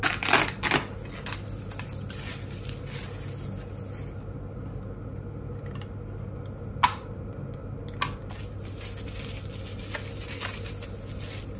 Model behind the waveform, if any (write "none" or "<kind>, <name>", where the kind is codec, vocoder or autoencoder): none